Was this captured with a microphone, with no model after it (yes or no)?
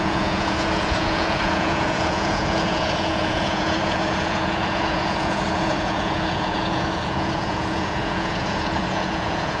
no